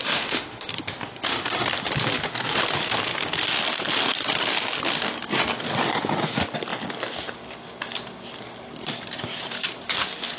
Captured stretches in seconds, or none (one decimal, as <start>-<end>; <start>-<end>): 0.7-10.4